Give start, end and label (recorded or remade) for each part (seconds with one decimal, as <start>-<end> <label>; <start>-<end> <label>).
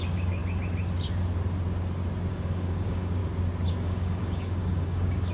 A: 0.0-0.4 remade; 0.4-2.3 recorded; 2.3-3.2 remade; 3.2-3.7 recorded; 3.7-5.3 remade